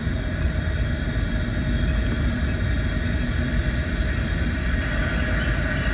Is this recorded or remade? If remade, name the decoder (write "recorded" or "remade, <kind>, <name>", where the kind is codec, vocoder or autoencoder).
recorded